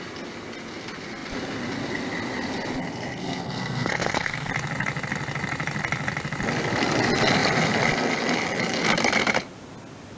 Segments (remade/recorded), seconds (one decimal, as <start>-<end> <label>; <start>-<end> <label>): 0.0-3.2 recorded; 3.2-4.5 remade; 4.5-10.2 recorded